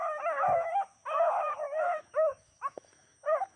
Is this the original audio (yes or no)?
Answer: no